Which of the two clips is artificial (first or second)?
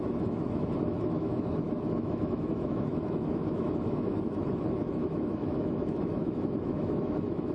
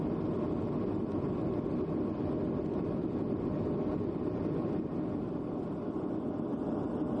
first